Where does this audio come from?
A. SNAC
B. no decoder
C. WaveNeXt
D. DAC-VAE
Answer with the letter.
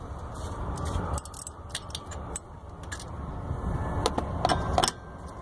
B